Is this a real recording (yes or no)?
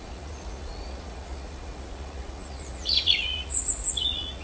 no